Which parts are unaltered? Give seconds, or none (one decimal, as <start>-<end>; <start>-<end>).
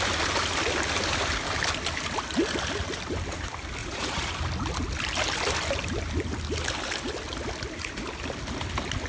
0.0-3.8; 4.3-9.1